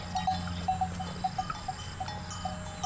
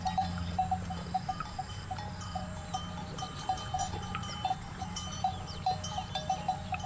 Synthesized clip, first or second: second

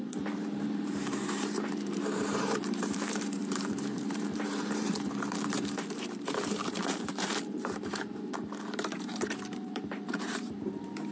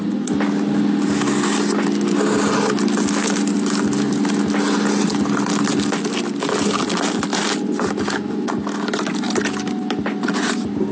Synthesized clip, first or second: first